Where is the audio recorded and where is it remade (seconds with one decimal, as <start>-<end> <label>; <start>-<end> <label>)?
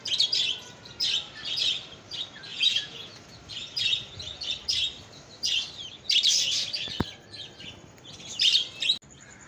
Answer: 0.0-2.5 recorded; 2.5-3.1 remade; 3.1-9.5 recorded